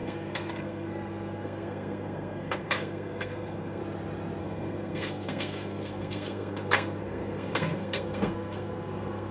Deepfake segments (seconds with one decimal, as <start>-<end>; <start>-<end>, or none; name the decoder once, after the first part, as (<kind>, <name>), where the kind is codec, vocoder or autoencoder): 0.0-3.8 (codec, SNAC); 4.4-9.3